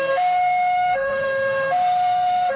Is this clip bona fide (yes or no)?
no